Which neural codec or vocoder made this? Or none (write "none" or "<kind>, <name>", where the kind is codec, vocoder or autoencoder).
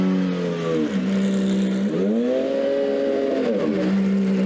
none